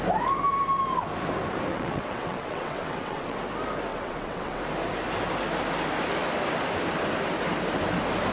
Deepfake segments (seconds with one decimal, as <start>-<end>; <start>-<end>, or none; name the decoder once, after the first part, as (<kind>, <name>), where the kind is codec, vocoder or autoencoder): 1.7-3.4 (vocoder, WaveNeXt); 3.9-4.6

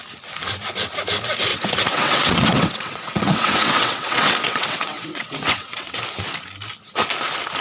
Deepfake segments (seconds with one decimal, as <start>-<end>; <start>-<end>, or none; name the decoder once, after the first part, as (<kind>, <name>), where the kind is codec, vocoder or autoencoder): 1.5-6.0 (vocoder, WaveNeXt)

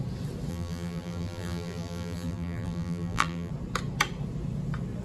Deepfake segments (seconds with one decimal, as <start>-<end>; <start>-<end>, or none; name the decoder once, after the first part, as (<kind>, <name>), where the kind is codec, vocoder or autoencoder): 0.5-3.5 (vocoder, BigVGAN v2)